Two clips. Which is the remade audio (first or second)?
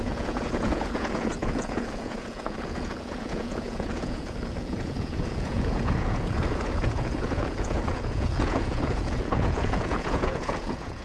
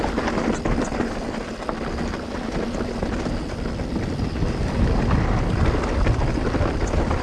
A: first